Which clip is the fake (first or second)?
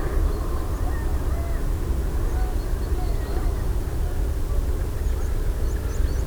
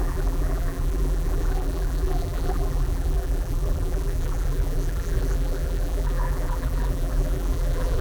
second